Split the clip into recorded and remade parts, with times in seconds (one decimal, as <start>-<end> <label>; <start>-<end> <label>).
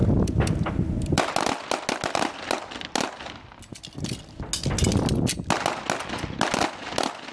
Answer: 0.0-7.3 recorded